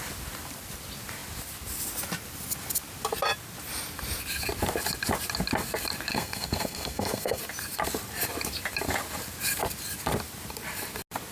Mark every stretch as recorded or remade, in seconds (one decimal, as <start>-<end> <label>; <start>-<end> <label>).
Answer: 0.0-6.1 recorded; 6.1-7.4 remade; 7.4-11.3 recorded